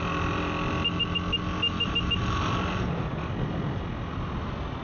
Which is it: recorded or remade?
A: recorded